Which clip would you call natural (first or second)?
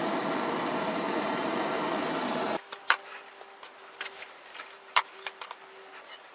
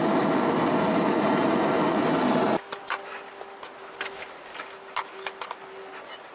second